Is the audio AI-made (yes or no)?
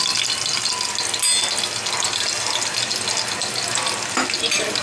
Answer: no